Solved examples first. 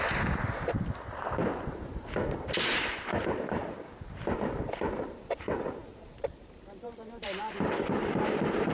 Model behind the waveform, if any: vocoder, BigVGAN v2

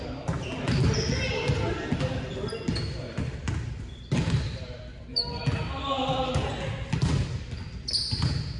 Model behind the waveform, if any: none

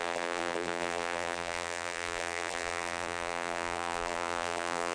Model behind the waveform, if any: vocoder, BigVGAN v2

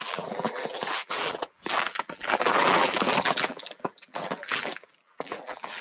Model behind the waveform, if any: vocoder, BigVGAN v2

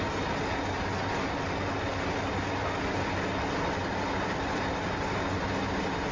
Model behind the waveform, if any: none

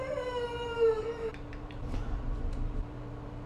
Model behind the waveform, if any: vocoder, BigVGAN v2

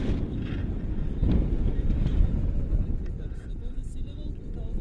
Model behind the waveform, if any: vocoder, BigVGAN v2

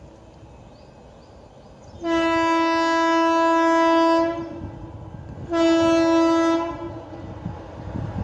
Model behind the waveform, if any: none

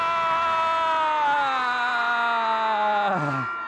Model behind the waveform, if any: none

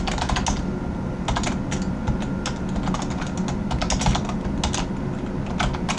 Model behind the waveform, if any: none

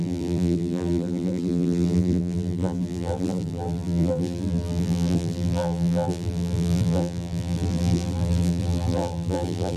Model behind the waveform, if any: vocoder, BigVGAN v2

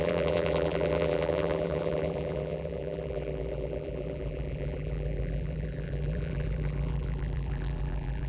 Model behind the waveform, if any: vocoder, BigVGAN v2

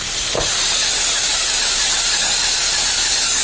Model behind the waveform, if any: none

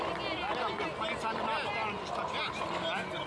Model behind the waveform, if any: none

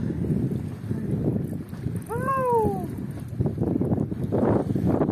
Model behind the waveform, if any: none